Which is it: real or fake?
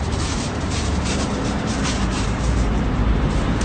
fake